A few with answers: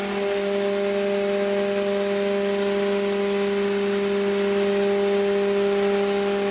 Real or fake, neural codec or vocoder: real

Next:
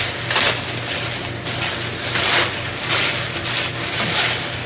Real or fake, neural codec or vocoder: real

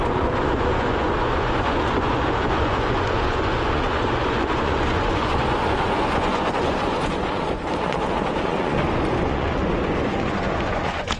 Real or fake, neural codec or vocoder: fake, vocoder, Vocos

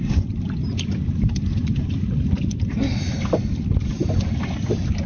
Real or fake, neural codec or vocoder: real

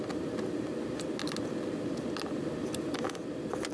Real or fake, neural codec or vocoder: real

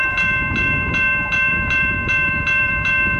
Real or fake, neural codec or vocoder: fake, vocoder, BigVGAN v2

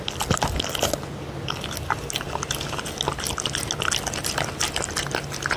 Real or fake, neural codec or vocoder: real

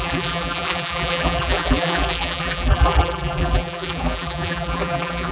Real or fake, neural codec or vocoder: fake, vocoder, BigVGAN v2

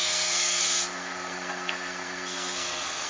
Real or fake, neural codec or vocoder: fake, codec, SNAC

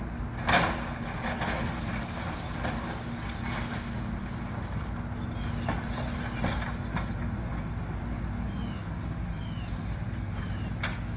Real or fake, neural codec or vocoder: real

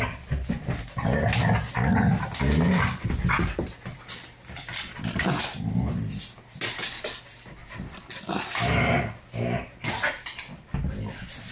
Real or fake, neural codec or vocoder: real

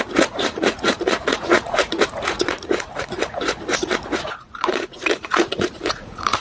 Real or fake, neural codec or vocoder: fake, vocoder, Vocos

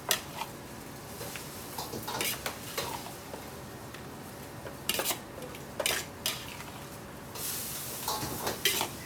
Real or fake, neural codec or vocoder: real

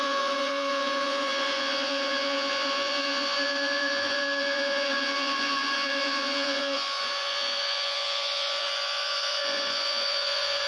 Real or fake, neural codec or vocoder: fake, vocoder, Vocos